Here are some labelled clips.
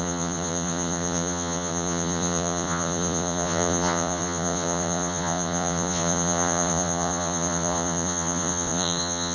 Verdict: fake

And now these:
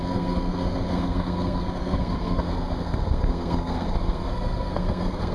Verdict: fake